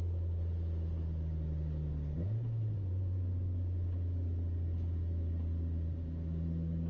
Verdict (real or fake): real